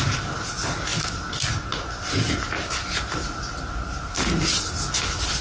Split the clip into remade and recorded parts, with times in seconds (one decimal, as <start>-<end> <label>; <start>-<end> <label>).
0.0-5.4 recorded